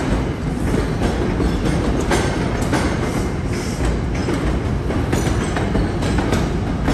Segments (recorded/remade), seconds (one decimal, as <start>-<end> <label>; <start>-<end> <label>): 0.0-6.9 recorded

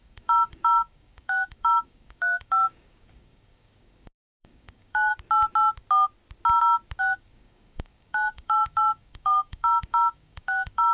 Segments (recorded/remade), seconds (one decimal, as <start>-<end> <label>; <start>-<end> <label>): 0.0-5.1 remade; 5.1-7.0 recorded; 7.0-10.9 remade

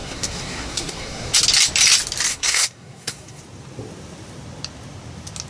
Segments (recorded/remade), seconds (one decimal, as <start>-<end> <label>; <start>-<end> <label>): 0.0-1.3 remade; 1.3-2.3 recorded; 2.3-3.4 remade; 3.4-5.5 recorded

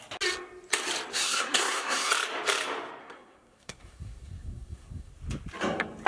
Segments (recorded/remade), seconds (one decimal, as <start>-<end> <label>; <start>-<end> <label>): 0.0-1.1 recorded; 1.1-2.1 remade; 2.1-3.0 recorded; 3.0-5.1 remade; 5.1-6.1 recorded

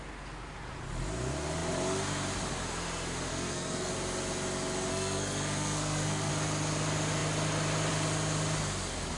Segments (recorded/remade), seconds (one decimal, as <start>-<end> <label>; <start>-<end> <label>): 0.0-3.3 recorded; 3.3-3.9 remade; 3.9-4.9 recorded; 4.9-6.3 remade; 6.3-9.2 recorded

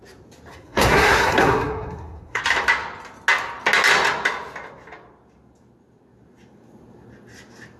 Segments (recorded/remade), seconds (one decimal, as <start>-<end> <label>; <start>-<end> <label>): 0.0-0.5 recorded; 0.5-2.4 remade; 2.4-7.8 recorded

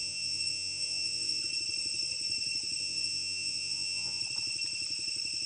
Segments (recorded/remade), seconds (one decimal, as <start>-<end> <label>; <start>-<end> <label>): 0.0-1.4 remade; 1.4-2.8 recorded; 2.8-4.2 remade; 4.2-5.5 recorded

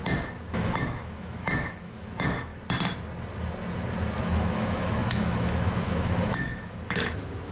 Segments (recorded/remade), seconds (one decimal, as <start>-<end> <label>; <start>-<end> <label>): 0.0-0.5 recorded; 0.5-2.5 remade; 2.5-4.2 recorded; 4.2-7.5 remade